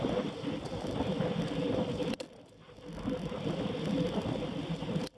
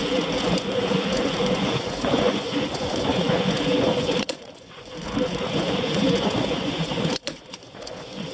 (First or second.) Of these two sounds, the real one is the first